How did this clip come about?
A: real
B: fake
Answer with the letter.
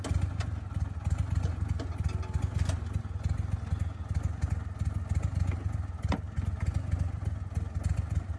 A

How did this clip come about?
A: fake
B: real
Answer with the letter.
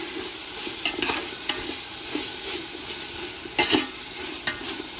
B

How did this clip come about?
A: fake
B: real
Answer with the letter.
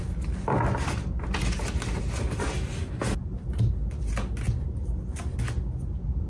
B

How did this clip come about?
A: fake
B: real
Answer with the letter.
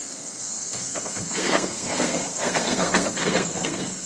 A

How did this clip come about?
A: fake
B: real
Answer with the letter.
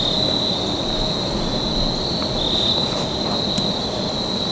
B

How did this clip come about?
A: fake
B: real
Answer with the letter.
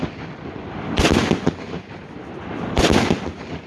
B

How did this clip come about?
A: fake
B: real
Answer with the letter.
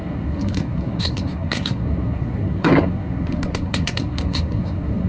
A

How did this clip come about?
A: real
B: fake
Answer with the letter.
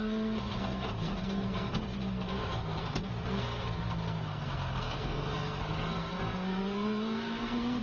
B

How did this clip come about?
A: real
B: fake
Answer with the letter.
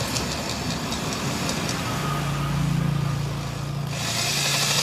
A